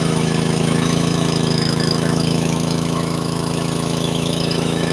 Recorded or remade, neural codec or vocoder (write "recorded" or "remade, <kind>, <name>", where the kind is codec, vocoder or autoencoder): remade, autoencoder, DAC-VAE